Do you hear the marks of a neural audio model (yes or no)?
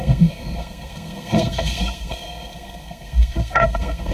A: yes